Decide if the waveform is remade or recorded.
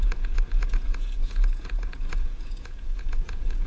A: remade